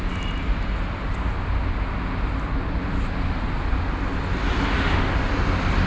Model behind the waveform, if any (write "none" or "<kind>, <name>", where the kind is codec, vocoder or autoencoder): none